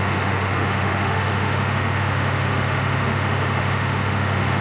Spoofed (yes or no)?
yes